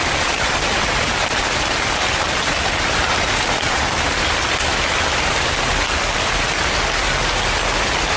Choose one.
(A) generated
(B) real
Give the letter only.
B